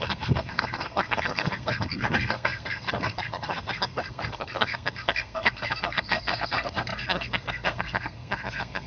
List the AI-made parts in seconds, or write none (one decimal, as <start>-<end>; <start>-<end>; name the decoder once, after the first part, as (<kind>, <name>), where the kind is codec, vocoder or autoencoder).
0.0-8.9 (codec, SNAC)